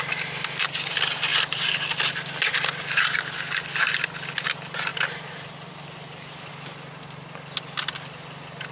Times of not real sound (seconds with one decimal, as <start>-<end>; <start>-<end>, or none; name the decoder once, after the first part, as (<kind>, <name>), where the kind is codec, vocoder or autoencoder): 1.3-2.1 (vocoder, BigVGAN v2); 4.9-6.5